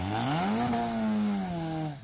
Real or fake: real